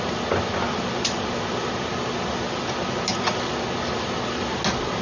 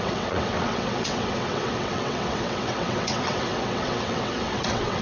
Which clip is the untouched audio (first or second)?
first